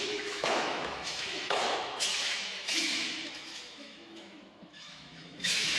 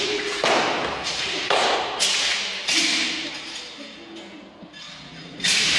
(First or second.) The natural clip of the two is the second